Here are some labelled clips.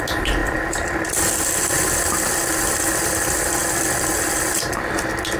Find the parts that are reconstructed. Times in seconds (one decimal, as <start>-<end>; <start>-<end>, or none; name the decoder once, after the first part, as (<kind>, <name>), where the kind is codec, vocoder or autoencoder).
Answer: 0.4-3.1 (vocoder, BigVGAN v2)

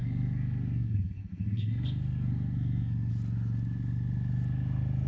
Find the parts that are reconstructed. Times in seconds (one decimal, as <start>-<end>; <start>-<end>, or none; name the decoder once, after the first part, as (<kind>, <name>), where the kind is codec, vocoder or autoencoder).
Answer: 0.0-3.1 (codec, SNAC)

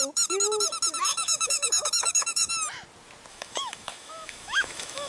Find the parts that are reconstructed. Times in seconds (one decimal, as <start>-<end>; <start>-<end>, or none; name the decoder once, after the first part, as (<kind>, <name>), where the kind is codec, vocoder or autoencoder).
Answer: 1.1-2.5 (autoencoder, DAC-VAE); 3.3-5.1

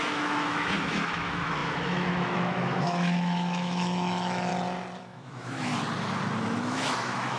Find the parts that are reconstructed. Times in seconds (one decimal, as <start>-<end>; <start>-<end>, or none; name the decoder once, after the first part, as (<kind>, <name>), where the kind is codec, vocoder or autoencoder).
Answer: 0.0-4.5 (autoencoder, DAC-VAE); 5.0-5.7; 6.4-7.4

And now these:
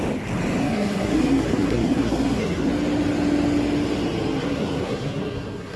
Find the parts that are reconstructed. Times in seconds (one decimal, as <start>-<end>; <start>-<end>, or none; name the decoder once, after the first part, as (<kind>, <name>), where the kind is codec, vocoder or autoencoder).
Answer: 0.6-2.7 (codec, SNAC); 4.4-5.8

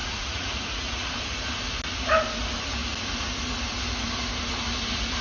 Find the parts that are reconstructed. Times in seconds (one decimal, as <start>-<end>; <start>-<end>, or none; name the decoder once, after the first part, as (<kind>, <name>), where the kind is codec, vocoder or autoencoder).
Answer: 0.0-1.1 (vocoder, Vocos)